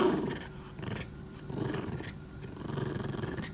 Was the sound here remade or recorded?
remade